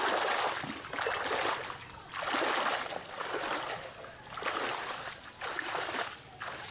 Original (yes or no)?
yes